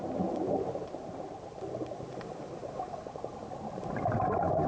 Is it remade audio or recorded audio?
recorded